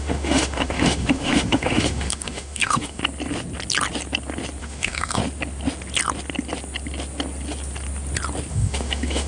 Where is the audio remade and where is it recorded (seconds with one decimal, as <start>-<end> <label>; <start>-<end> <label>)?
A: 0.0-3.0 remade; 3.0-4.6 recorded; 4.6-5.2 remade; 5.2-8.5 recorded; 8.5-9.3 remade